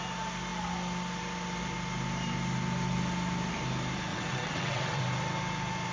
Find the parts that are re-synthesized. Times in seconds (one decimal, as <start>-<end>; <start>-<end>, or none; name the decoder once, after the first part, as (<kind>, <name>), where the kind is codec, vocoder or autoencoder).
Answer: 4.1-5.0 (vocoder, WaveNeXt)